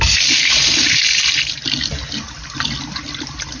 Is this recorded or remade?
recorded